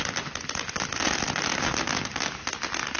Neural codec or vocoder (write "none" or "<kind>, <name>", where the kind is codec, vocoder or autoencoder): none